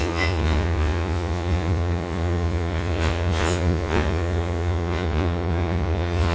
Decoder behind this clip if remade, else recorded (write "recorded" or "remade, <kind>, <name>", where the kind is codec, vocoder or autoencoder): remade, vocoder, Vocos